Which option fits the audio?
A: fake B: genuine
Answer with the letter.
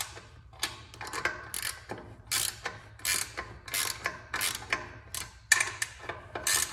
B